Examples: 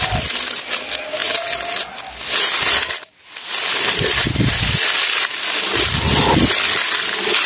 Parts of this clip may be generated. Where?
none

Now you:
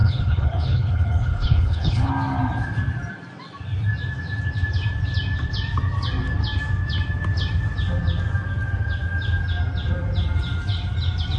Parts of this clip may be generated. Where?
0.0-2.1

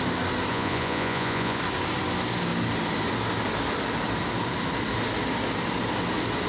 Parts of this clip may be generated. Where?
0.5-1.6

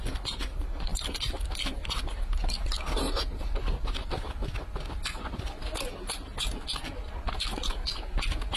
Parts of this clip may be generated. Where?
none

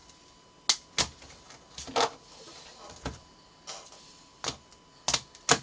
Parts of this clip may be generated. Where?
none

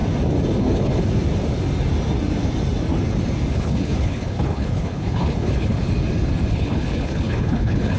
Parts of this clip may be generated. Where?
0.6-1.0; 3.5-5.8; 6.5-8.0